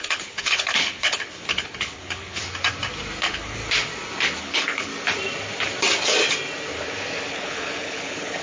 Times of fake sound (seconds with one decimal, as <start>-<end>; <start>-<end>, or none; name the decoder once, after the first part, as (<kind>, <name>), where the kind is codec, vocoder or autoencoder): 0.0-2.4 (codec, HILCodec); 3.2-3.6; 4.4-4.9; 7.3-8.4